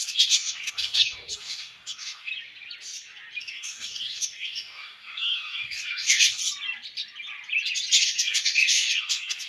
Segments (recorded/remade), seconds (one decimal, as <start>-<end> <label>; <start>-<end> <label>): 0.0-2.3 remade; 2.3-3.4 recorded; 3.4-6.4 remade; 6.4-8.0 recorded; 8.0-9.5 remade